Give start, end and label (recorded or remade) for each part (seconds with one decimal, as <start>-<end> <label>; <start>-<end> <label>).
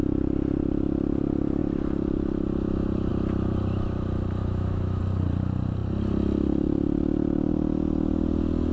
0.0-4.4 recorded; 4.4-5.0 remade; 5.0-8.7 recorded